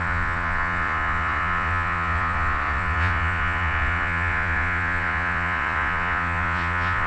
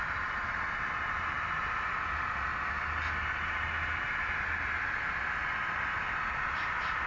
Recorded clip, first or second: second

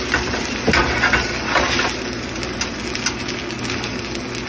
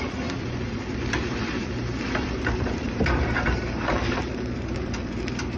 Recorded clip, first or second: first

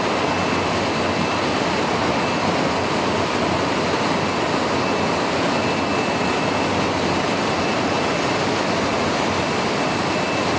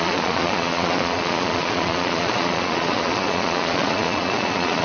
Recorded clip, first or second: first